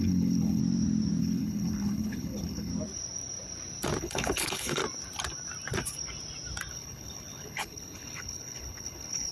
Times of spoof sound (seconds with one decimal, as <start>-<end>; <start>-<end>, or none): 0.0-0.6; 1.2-2.7; 4.0-4.8; 6.7-9.3